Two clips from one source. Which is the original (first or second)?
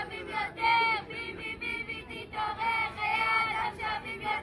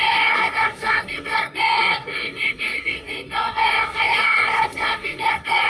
first